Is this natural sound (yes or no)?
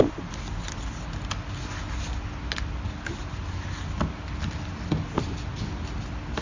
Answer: yes